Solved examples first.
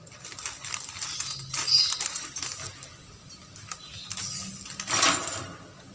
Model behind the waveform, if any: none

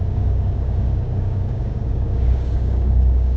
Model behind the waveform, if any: codec, DAC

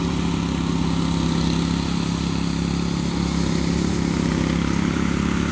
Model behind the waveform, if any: none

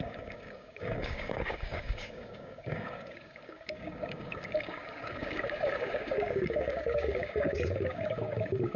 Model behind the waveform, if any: codec, DAC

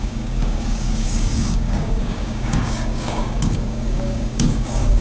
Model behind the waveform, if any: codec, DAC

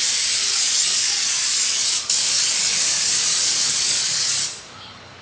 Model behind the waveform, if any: codec, DAC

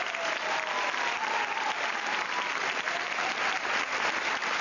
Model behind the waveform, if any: none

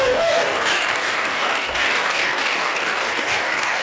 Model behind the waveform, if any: codec, DAC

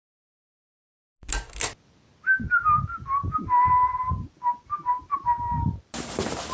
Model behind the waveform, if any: none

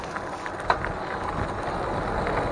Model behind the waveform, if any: none